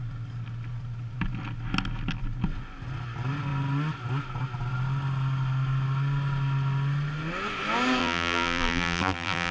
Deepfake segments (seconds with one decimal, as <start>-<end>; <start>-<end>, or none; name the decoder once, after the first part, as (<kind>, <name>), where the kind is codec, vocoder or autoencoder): 8.0-9.5 (vocoder, BigVGAN v2)